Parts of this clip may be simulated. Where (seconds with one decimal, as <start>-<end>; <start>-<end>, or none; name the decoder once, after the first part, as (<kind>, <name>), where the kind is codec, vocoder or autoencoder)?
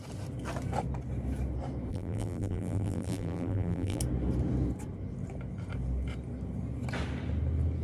1.9-4.0 (vocoder, BigVGAN v2)